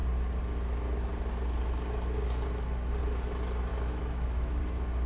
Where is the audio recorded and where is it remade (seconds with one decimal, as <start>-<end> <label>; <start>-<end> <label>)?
0.0-3.7 recorded; 3.7-4.6 remade; 4.6-5.1 recorded